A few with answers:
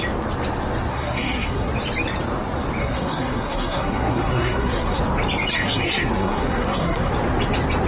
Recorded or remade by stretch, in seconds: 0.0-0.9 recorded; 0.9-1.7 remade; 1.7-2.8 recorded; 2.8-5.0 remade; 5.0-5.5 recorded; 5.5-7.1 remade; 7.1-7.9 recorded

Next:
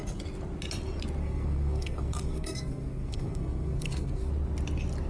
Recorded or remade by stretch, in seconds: 0.0-1.2 recorded; 1.2-4.3 remade; 4.3-5.1 recorded

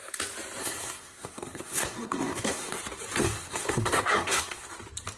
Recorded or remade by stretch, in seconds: 0.0-0.6 recorded; 0.6-2.8 remade; 2.8-3.2 recorded; 3.2-4.7 remade; 4.7-5.2 recorded

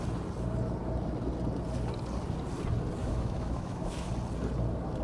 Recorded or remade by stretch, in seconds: 0.0-3.0 recorded; 3.0-4.1 remade; 4.1-5.0 recorded